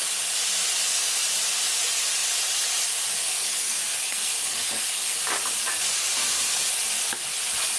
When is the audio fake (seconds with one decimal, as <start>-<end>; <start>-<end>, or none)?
3.2-5.2; 6.2-6.7